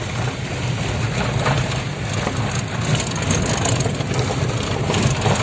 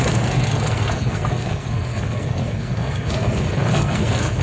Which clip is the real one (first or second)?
first